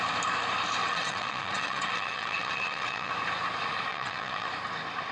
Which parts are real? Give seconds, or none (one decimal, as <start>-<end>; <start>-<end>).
0.0-0.8; 3.1-3.9; 4.5-5.1